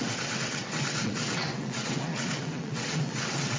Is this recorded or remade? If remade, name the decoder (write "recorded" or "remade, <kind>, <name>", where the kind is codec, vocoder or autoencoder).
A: remade, vocoder, WaveNeXt